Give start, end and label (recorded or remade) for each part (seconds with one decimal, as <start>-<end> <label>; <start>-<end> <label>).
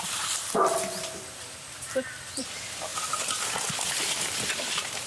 0.0-0.6 remade; 0.6-2.4 recorded; 2.4-2.9 remade; 2.9-4.6 recorded; 4.6-5.1 remade